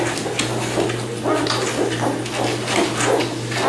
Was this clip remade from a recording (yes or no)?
no